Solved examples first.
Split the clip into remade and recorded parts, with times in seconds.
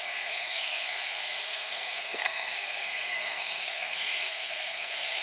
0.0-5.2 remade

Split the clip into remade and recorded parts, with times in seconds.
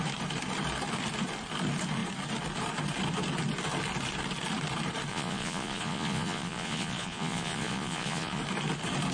0.0-5.1 recorded; 5.1-8.4 remade; 8.4-9.1 recorded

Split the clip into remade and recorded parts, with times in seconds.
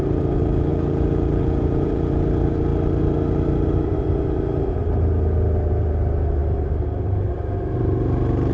0.0-0.7 recorded; 0.7-2.1 remade; 2.1-8.5 recorded